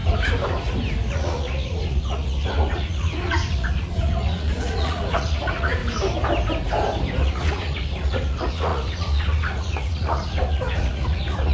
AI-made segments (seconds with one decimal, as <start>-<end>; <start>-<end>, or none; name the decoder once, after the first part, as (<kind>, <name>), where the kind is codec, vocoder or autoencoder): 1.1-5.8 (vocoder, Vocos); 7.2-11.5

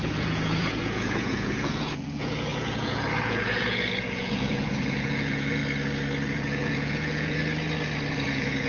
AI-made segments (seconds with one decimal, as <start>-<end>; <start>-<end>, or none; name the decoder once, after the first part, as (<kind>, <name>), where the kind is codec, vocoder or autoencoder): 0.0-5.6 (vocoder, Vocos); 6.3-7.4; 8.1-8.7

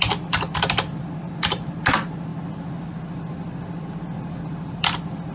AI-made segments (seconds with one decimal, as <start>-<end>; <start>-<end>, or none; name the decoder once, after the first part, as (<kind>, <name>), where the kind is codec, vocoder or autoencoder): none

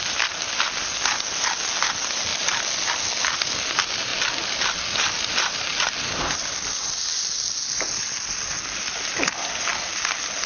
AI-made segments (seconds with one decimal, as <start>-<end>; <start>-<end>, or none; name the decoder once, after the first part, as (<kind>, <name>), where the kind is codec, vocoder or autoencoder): 2.3-2.9 (vocoder, BigVGAN v2); 4.1-4.8; 5.7-6.5

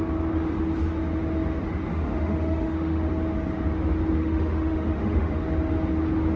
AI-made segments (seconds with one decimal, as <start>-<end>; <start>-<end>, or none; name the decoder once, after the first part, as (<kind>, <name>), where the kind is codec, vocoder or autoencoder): 1.9-3.1 (autoencoder, DAC-VAE); 4.2-5.4